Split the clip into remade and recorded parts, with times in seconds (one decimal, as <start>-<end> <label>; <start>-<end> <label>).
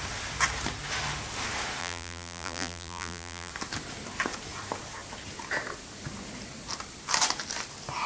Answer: 0.0-1.8 recorded; 1.8-3.5 remade; 3.5-8.1 recorded